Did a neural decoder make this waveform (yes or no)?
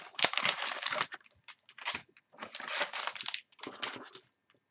no